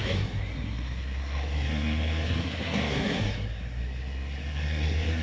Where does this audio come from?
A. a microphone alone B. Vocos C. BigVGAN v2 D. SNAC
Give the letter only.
D